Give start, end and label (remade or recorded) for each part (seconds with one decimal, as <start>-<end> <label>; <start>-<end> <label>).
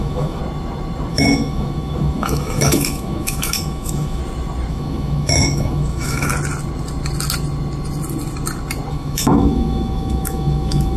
0.0-0.4 remade; 0.4-1.1 recorded; 1.1-4.2 remade; 4.2-4.7 recorded; 4.7-6.3 remade; 6.3-8.9 recorded; 8.9-11.0 remade